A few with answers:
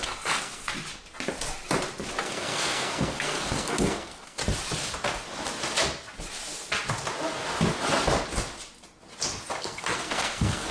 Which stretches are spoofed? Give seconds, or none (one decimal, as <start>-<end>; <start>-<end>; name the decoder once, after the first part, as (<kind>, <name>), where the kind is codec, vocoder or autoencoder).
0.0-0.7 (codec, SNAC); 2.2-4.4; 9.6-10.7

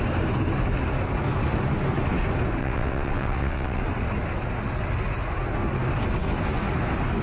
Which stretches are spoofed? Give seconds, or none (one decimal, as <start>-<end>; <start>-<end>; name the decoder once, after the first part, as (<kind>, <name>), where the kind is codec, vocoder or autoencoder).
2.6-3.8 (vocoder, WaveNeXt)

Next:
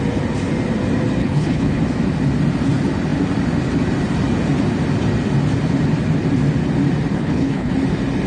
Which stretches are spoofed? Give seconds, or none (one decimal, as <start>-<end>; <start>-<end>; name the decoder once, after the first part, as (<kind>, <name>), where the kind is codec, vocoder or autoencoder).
1.2-1.8 (codec, HILCodec); 7.1-7.7

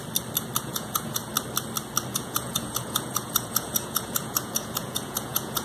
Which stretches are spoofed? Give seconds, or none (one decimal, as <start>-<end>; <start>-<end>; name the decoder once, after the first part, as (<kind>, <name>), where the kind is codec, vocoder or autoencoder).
0.6-1.2 (vocoder, Vocos); 2.1-5.6